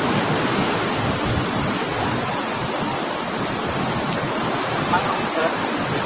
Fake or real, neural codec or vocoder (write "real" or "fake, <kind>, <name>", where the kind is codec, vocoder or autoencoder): real